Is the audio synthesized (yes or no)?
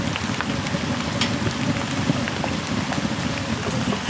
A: no